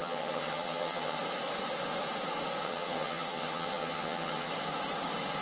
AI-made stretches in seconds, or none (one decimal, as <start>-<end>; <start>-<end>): 0.0-1.2; 2.6-4.5